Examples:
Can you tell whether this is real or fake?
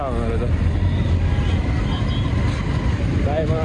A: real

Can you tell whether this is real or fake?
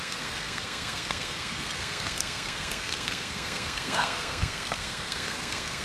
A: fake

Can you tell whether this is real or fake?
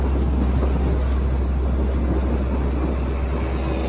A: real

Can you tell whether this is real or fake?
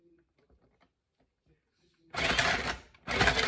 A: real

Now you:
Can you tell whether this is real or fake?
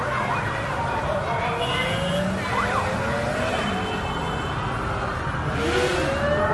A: real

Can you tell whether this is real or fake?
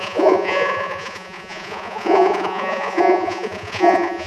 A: fake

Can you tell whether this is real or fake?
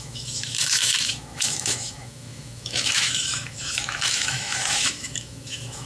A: fake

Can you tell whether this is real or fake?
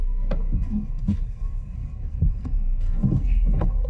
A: fake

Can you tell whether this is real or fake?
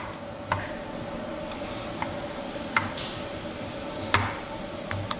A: real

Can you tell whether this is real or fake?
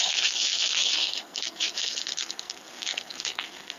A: fake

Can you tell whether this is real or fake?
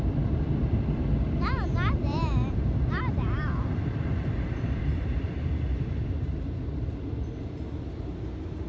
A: fake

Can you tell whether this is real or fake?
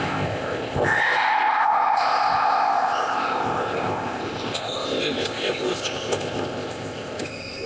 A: fake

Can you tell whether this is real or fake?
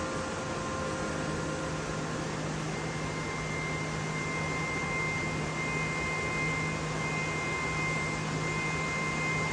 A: real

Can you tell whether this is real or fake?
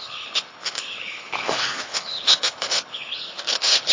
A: fake